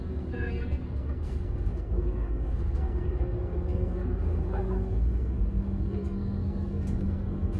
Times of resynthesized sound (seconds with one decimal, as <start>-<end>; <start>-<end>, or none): 0.0-7.6